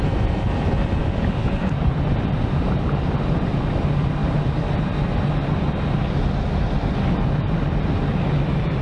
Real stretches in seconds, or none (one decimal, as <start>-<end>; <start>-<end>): 0.0-1.0; 1.9-8.8